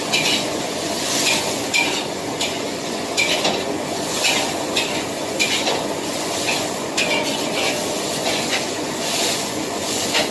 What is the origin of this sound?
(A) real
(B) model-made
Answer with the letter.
B